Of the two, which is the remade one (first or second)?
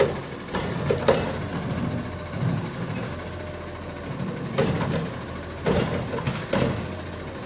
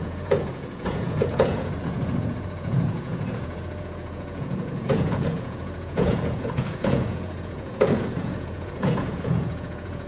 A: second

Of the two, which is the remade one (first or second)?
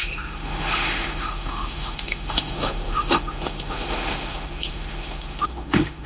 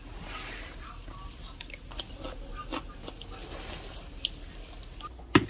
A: first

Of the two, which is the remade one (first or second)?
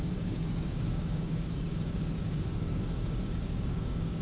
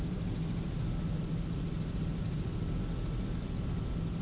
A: first